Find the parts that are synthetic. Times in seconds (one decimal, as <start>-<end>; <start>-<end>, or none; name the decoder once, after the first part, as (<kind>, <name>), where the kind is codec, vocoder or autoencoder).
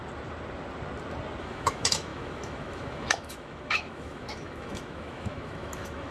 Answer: 1.4-6.1 (autoencoder, DAC-VAE)